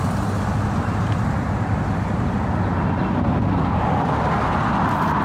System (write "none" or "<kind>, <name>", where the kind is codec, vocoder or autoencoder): none